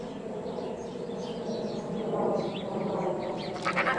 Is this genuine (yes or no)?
yes